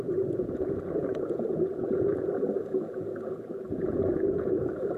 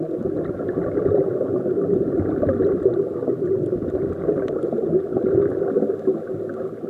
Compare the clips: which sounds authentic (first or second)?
second